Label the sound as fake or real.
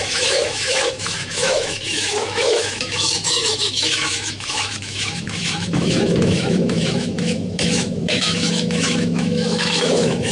fake